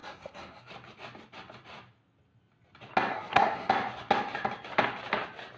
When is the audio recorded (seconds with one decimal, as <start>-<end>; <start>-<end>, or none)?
0.7-3.1; 3.7-5.6